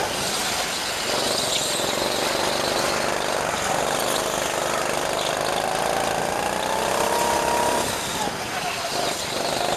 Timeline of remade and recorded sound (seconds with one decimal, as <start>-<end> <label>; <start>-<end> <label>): 0.0-9.8 recorded